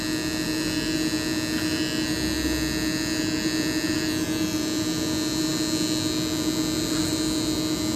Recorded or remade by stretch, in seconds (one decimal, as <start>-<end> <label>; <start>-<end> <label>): 0.0-8.0 recorded

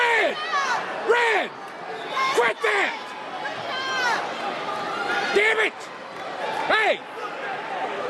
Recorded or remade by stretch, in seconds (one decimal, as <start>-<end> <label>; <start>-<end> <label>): 0.0-2.0 recorded; 2.0-2.6 remade; 2.6-8.1 recorded

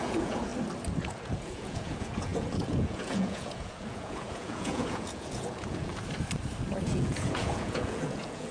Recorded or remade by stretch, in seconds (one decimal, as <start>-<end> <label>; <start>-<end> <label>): 0.0-0.5 remade; 0.5-1.0 recorded; 1.0-5.9 remade; 5.9-6.8 recorded; 6.8-8.5 remade

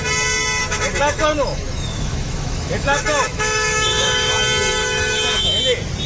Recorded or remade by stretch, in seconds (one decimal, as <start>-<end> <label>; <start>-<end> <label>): 0.0-0.6 recorded; 0.6-4.3 remade; 4.3-4.8 recorded; 4.8-5.6 remade; 5.6-6.1 recorded